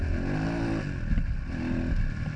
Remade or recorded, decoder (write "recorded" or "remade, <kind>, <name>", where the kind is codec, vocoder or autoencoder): recorded